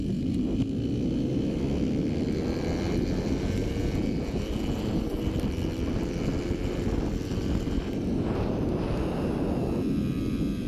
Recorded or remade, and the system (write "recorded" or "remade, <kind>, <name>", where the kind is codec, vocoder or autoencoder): recorded